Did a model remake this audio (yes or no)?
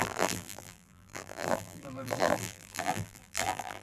yes